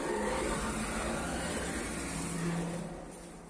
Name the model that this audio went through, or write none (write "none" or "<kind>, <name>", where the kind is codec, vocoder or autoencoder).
none